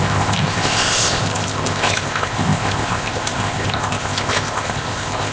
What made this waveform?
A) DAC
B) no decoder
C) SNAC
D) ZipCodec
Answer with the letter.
D